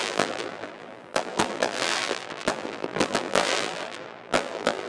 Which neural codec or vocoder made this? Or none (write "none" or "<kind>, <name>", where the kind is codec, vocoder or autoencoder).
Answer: vocoder, BigVGAN v2